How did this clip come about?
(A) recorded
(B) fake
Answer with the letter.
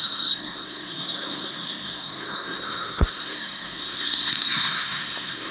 B